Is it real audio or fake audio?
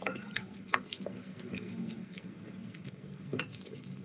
fake